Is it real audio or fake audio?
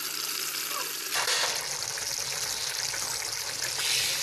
real